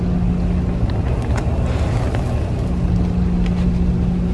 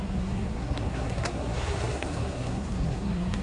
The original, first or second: first